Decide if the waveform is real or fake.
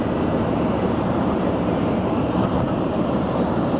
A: fake